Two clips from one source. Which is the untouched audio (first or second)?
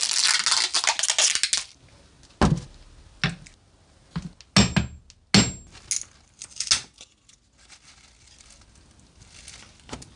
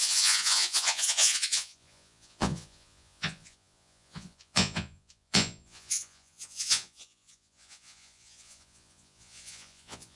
first